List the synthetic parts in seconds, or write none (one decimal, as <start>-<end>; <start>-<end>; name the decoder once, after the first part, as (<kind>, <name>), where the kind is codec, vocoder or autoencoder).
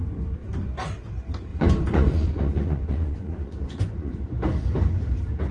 1.5-4.2 (vocoder, Vocos)